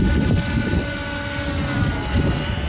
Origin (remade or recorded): recorded